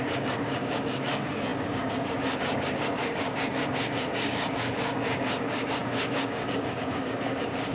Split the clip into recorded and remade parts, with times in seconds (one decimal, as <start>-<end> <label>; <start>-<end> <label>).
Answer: 0.0-7.7 remade